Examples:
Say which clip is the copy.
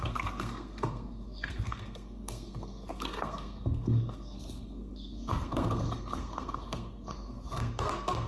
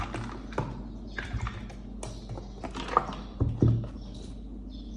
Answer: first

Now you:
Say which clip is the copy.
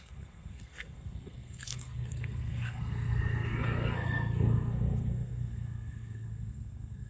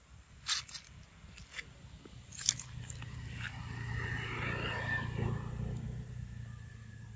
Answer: first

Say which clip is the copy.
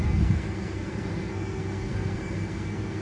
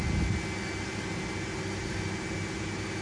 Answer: first